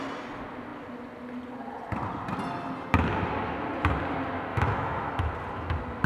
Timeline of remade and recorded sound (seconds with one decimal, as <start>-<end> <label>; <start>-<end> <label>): 0.0-4.5 recorded; 4.5-5.1 remade; 5.1-6.1 recorded